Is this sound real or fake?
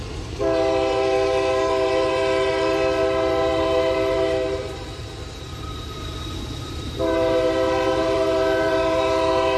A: fake